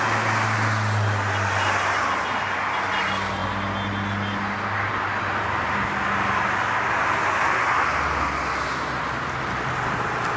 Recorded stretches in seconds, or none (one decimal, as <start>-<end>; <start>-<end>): 0.0-10.4